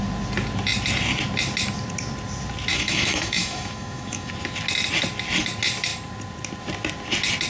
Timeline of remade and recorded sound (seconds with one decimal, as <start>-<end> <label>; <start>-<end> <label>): 0.0-2.7 recorded; 2.7-4.3 remade; 4.3-7.5 recorded